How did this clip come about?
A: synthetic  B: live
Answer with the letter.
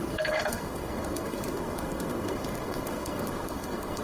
A